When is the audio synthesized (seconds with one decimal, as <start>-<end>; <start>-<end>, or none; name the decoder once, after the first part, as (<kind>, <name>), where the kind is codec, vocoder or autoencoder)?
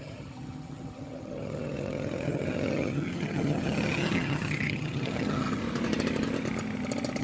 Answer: 0.0-5.6 (vocoder, HiFi-GAN)